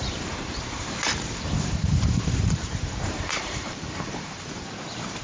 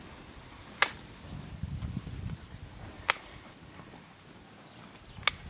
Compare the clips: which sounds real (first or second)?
second